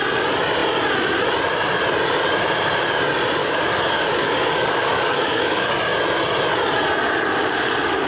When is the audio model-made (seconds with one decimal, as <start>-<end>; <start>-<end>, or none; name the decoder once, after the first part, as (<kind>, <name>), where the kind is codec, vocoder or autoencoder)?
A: 3.4-5.8 (codec, DAC)

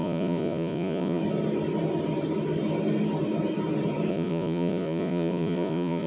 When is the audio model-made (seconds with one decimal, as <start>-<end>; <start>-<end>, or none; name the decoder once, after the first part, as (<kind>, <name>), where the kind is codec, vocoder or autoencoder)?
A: 0.0-1.2 (vocoder, Vocos); 4.1-6.1

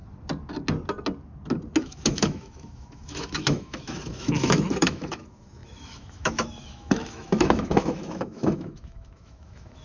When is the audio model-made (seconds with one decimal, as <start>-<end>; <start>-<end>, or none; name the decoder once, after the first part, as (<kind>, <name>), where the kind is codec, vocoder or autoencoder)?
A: 1.8-9.8 (autoencoder, DAC-VAE)

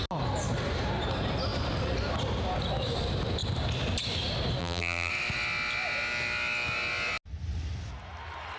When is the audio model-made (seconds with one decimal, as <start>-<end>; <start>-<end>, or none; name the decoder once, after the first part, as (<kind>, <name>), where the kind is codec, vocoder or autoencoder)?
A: 4.6-5.1 (vocoder, BigVGAN v2)

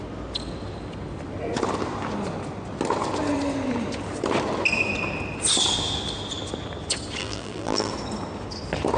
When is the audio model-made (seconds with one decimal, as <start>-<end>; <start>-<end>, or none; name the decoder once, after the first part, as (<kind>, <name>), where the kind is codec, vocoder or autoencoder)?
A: 7.2-7.9 (vocoder, BigVGAN v2)